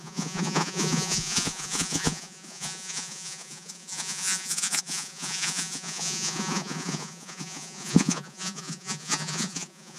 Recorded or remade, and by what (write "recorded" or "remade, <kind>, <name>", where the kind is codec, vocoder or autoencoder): remade, vocoder, Vocos